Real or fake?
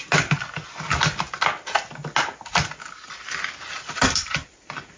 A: real